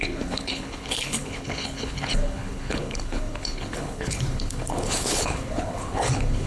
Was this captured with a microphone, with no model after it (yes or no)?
no